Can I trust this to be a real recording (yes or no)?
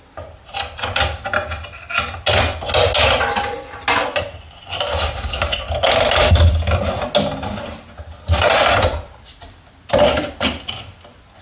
yes